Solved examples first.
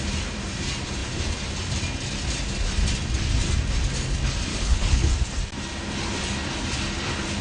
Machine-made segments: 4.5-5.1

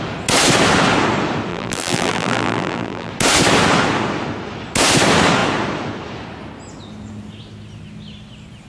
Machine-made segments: 1.5-3.1

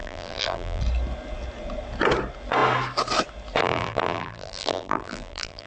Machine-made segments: 0.0-0.8; 3.6-5.7

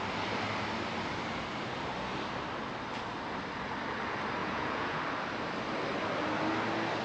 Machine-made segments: 4.4-5.0

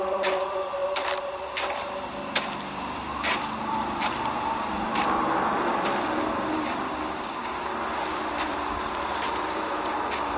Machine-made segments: 0.0-10.4

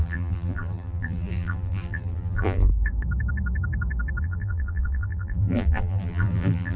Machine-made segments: 0.0-2.7; 4.2-6.8